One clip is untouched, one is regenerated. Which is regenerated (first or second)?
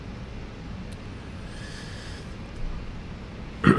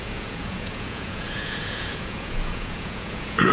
second